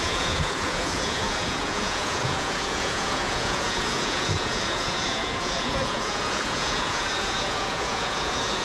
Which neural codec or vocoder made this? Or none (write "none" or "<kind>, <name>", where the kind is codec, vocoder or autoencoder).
vocoder, Vocos